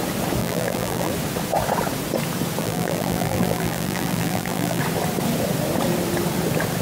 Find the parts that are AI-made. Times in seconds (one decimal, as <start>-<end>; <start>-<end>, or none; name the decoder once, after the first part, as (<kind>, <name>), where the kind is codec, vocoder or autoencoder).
0.4-1.1 (vocoder, BigVGAN v2); 2.6-4.8